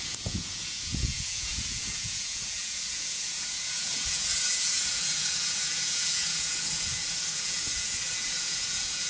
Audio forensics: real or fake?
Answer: fake